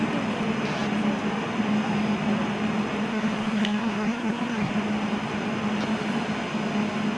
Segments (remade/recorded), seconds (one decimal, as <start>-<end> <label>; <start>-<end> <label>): 0.0-3.1 recorded; 3.1-4.7 remade; 4.7-7.2 recorded